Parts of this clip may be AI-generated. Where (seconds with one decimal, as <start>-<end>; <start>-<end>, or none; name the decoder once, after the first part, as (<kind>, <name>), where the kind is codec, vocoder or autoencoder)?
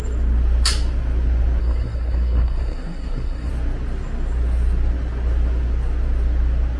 1.6-3.5 (codec, SNAC)